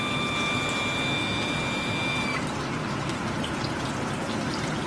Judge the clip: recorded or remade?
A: recorded